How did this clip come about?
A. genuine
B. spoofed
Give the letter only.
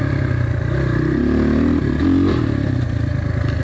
A